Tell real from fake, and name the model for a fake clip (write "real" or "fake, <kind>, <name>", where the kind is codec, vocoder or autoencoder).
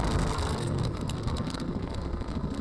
fake, codec, SNAC